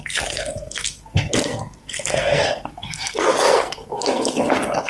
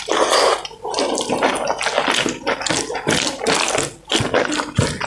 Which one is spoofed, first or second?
first